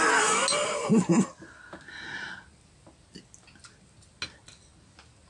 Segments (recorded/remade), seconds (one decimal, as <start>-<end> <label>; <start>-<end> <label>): 0.0-5.3 recorded